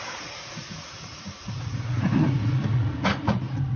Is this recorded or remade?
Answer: remade